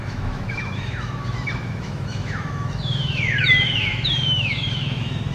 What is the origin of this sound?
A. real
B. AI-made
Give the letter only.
B